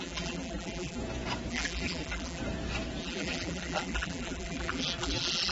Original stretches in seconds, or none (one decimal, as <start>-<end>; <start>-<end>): 1.0-1.5; 2.4-3.0